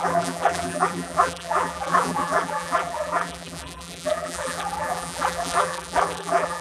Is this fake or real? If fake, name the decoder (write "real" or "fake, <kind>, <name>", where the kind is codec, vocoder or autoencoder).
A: fake, vocoder, BigVGAN v2